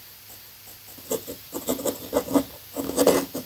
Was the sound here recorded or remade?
recorded